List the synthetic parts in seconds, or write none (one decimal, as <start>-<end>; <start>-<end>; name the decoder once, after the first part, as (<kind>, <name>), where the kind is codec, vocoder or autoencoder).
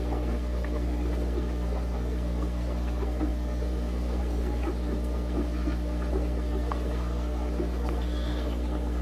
0.0-9.0 (codec, SNAC)